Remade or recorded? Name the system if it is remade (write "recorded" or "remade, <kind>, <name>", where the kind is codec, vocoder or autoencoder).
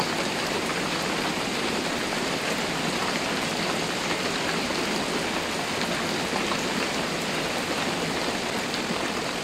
recorded